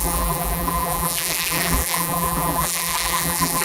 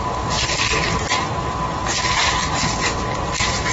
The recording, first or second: second